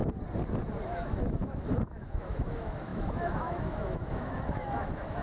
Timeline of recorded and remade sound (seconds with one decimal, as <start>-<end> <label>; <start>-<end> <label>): 0.0-0.8 recorded; 0.8-5.2 remade